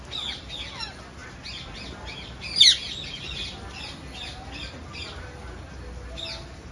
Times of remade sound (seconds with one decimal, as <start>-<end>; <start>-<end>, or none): none